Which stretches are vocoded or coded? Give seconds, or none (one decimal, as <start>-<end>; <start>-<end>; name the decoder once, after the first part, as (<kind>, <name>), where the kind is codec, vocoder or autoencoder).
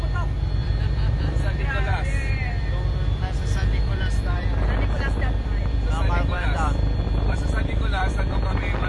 0.0-8.9 (vocoder, BigVGAN v2)